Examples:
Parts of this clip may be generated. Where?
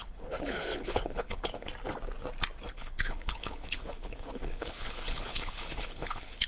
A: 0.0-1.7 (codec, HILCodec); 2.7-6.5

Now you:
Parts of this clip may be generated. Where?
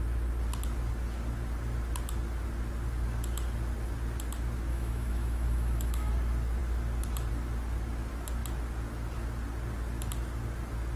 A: 4.7-6.1 (autoencoder, DAC-VAE)